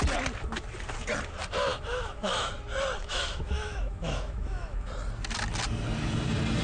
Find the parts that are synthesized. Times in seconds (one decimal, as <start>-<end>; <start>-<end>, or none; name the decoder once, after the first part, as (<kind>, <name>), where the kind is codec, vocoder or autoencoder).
1.7-2.5 (autoencoder, DAC-VAE); 3.0-4.9